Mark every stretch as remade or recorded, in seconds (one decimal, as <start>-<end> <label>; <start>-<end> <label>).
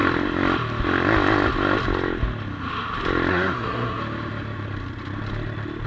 0.0-3.3 recorded; 3.3-4.0 remade; 4.0-5.9 recorded